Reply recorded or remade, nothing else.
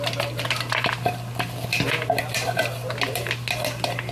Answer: recorded